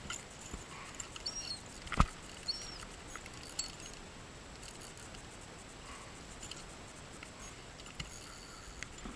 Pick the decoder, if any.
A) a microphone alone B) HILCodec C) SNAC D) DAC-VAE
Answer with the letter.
A